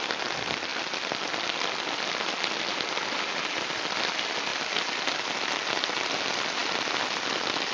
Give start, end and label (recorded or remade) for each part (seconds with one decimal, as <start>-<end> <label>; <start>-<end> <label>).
0.0-7.7 recorded